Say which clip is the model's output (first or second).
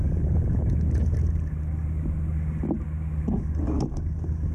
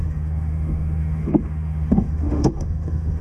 second